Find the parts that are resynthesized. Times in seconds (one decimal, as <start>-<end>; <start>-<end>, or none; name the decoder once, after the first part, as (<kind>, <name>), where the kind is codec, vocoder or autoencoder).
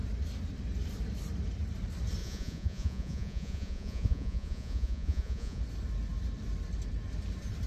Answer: 2.2-5.6 (vocoder, Vocos)